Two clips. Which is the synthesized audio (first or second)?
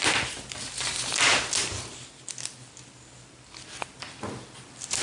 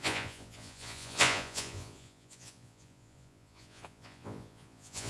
second